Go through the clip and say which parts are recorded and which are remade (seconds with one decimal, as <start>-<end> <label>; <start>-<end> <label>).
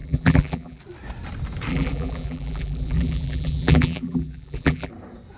0.0-0.8 remade; 0.8-1.7 recorded; 1.7-4.9 remade; 4.9-5.4 recorded